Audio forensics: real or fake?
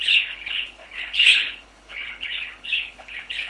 fake